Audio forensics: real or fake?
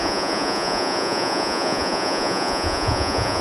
fake